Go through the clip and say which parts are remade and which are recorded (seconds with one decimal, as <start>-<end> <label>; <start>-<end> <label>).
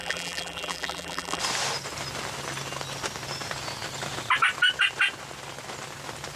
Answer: 0.0-1.4 remade; 1.4-6.4 recorded